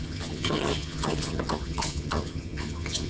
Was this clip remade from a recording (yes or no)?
yes